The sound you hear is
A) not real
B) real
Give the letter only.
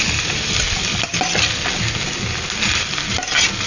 B